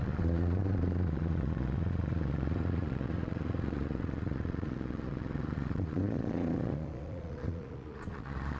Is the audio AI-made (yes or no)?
yes